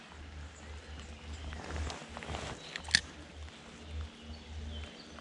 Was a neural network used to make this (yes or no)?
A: no